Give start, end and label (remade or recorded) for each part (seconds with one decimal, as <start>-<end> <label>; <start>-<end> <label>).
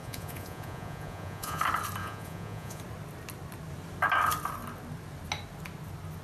0.0-1.6 remade; 1.6-2.0 recorded; 2.0-2.8 remade; 2.8-6.2 recorded